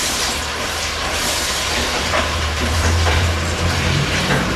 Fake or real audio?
fake